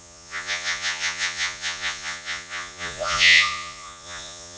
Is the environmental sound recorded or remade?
remade